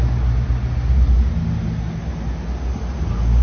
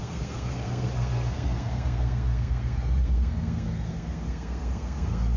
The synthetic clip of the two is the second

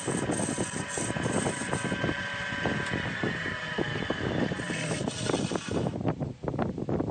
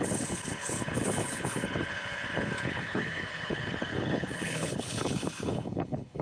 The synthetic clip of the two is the second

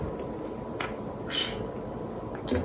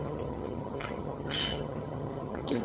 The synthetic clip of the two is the second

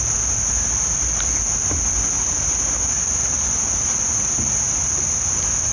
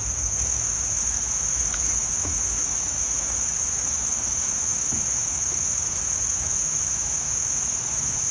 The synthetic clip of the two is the second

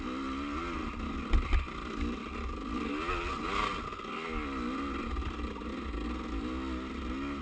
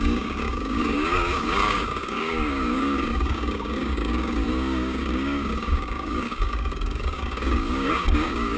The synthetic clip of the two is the second